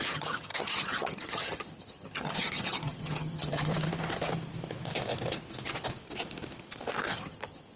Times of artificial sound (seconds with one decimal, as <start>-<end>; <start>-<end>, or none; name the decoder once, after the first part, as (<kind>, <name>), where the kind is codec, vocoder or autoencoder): 0.0-3.7 (vocoder, HiFi-GAN); 7.1-7.8